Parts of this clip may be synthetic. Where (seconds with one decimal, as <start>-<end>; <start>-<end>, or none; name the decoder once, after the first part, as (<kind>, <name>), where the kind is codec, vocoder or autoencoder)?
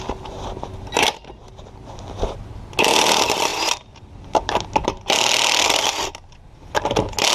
3.5-5.0 (vocoder, BigVGAN v2)